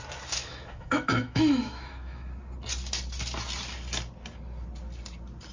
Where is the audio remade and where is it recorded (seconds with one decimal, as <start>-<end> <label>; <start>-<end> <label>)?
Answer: 0.0-0.4 recorded; 0.4-2.3 remade; 2.3-5.5 recorded

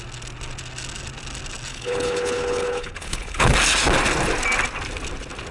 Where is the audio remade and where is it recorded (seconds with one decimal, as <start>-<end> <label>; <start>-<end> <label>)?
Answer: 0.0-1.7 recorded; 1.7-3.5 remade; 3.5-5.5 recorded

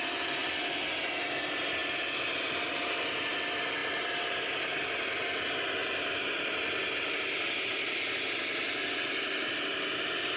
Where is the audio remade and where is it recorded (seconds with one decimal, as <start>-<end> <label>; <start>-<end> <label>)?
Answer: 0.0-10.4 recorded

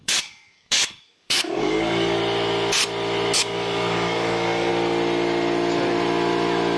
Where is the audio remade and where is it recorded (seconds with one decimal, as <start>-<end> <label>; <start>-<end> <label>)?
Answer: 0.0-2.2 remade; 2.2-3.4 recorded; 3.4-4.7 remade; 4.7-6.8 recorded

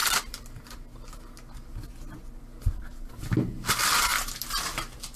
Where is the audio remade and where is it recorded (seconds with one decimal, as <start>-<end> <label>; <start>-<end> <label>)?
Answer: 0.0-5.2 recorded